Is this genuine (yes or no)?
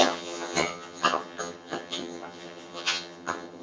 no